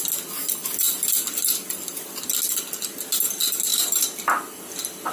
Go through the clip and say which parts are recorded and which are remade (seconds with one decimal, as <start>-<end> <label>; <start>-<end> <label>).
0.0-3.7 recorded; 3.7-4.3 remade; 4.3-5.1 recorded